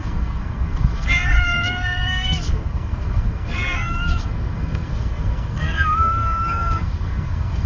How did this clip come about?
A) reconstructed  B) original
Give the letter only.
A